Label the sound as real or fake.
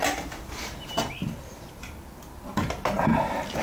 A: real